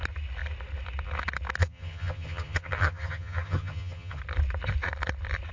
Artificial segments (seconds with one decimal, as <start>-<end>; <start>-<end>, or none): 1.6-4.2